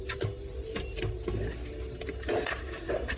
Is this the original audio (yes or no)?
yes